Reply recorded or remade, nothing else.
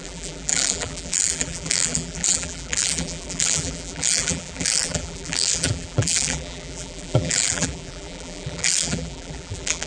remade